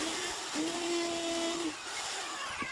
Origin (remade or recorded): recorded